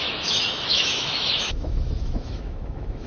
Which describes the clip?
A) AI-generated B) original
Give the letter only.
A